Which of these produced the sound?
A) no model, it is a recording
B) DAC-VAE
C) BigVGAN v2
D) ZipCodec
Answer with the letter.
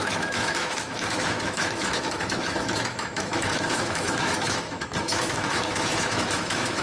B